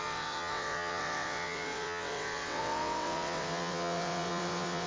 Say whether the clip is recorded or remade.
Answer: remade